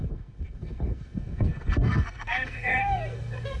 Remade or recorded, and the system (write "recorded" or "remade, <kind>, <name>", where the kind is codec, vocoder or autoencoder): remade, codec, SNAC